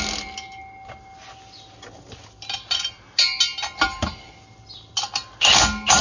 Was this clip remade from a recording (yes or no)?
no